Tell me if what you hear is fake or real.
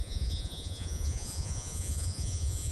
fake